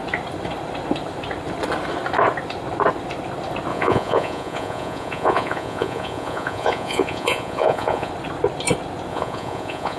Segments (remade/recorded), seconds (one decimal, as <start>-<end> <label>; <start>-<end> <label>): 0.0-3.7 recorded; 3.7-8.1 remade; 8.1-9.1 recorded; 9.1-10.0 remade